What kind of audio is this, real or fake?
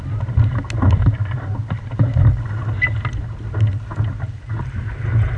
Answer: real